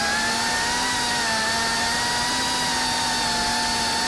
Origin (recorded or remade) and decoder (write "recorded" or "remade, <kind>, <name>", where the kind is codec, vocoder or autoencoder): recorded